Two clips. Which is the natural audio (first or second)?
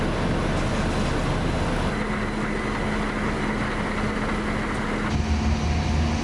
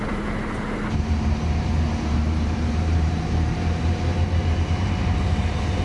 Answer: first